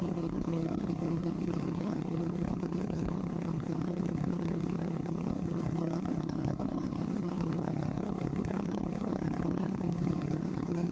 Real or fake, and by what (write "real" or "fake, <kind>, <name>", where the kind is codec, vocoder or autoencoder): fake, codec, SNAC